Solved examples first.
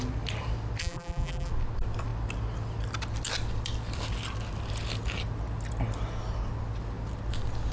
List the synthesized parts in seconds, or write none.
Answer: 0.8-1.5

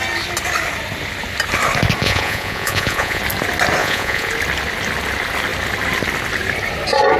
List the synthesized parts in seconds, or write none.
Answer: 2.0-3.2; 3.8-4.3

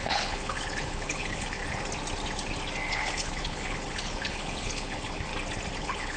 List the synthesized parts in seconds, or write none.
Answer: 0.0-1.6; 2.9-5.3; 5.8-6.2

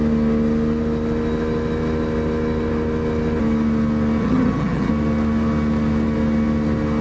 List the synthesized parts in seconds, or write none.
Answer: 4.2-4.9

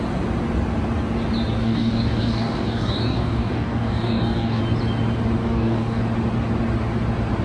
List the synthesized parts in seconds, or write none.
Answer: 1.6-4.6; 5.4-6.0